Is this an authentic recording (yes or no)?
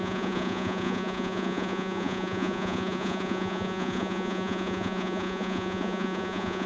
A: no